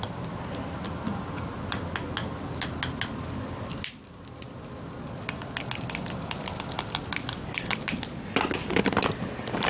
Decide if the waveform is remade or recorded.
recorded